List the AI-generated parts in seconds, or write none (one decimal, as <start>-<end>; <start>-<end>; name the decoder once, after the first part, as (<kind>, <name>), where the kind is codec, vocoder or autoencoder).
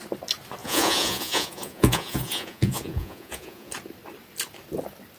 0.6-3.7 (vocoder, Vocos)